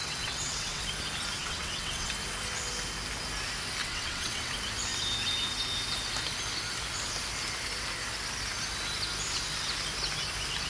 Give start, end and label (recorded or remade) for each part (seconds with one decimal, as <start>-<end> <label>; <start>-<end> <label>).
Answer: 0.0-0.8 remade; 0.8-1.4 recorded; 1.4-2.1 remade; 2.1-3.8 recorded; 3.8-4.5 remade; 4.5-10.7 recorded